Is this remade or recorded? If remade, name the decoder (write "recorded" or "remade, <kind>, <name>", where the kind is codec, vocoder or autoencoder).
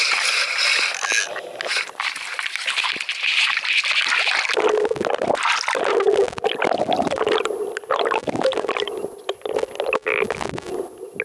recorded